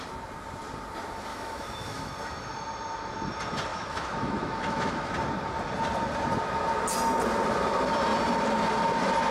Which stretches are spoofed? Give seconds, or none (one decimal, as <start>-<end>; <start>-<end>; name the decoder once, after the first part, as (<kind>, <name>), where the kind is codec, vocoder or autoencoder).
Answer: 1.3-2.1 (autoencoder, DAC-VAE); 3.7-5.1